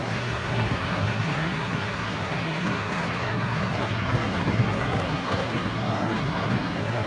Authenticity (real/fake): fake